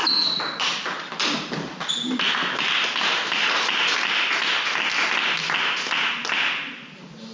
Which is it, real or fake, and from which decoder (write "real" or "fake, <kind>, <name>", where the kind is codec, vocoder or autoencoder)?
real